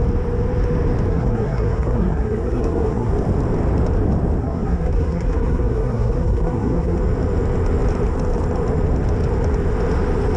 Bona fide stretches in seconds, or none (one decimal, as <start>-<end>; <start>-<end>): 0.0-1.1; 3.1-4.4; 7.0-10.4